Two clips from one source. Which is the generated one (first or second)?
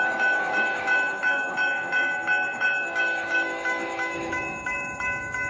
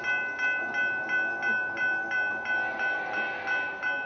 first